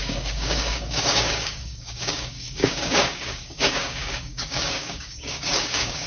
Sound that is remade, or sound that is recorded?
remade